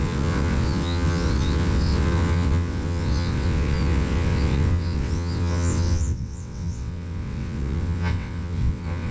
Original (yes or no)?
no